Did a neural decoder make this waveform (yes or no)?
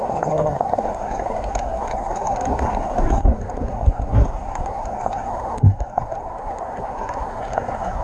yes